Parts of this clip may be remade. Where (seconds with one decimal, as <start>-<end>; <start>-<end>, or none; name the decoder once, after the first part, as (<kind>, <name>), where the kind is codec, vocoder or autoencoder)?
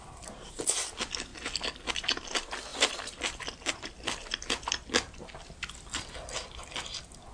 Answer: none